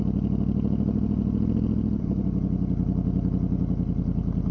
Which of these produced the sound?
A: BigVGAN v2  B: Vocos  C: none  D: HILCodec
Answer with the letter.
C